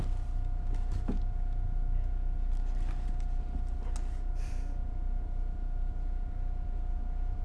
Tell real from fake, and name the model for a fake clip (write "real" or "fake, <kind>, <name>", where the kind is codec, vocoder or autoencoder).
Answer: real